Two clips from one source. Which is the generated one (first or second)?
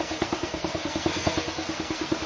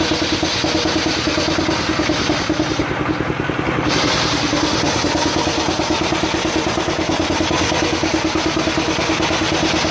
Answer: first